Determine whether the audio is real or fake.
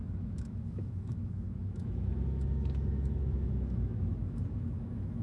fake